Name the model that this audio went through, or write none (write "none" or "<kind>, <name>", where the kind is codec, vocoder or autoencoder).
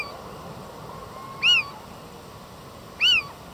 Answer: none